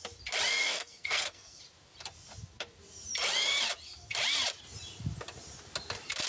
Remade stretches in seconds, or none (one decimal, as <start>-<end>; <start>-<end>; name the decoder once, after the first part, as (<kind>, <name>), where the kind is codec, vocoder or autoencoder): 0.6-1.6 (codec, SNAC)